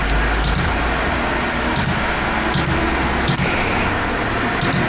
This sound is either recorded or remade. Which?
recorded